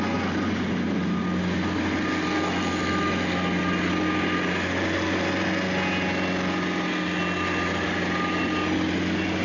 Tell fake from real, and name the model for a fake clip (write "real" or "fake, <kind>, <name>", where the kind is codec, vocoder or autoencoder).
real